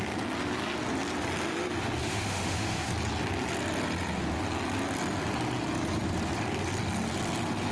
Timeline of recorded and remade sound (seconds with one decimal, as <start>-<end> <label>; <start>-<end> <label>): 0.0-2.0 recorded; 2.0-2.9 remade; 2.9-7.7 recorded